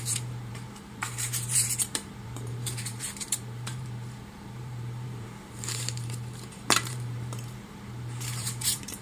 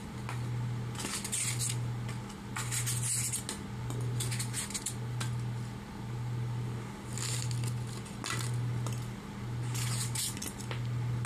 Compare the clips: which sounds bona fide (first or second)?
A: second